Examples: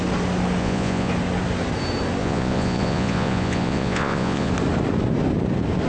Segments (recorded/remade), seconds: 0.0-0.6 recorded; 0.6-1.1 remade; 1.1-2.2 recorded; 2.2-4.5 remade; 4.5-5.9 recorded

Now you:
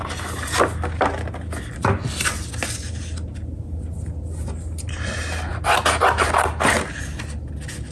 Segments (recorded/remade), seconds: 0.0-7.9 recorded

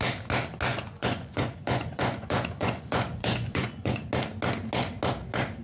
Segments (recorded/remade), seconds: 0.0-0.7 recorded; 0.7-4.1 remade; 4.1-5.6 recorded

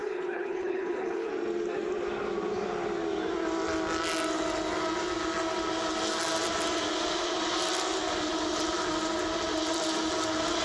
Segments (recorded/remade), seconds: 0.0-1.3 remade; 1.3-10.6 recorded

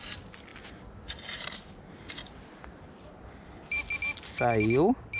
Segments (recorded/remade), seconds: 0.0-5.2 recorded

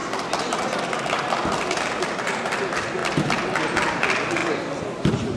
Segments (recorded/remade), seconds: 0.0-2.0 recorded; 2.0-3.0 remade; 3.0-3.6 recorded; 3.6-4.4 remade; 4.4-5.0 recorded; 5.0-5.4 remade

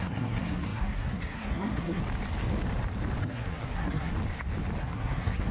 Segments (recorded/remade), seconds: 0.0-2.0 remade; 2.0-3.2 recorded; 3.2-4.1 remade; 4.1-4.8 recorded; 4.8-5.5 remade

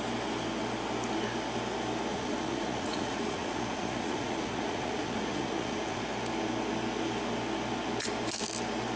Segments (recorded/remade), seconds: 0.0-2.1 recorded; 2.1-6.0 remade; 6.0-9.0 recorded